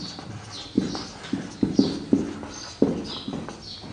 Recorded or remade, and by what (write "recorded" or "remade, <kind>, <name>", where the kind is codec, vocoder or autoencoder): recorded